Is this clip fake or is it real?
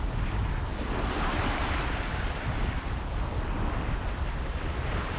real